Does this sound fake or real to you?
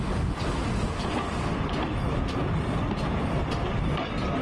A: real